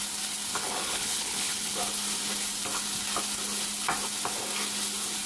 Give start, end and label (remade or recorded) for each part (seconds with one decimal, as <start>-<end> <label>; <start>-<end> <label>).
0.0-0.5 recorded; 0.5-1.8 remade; 1.8-5.3 recorded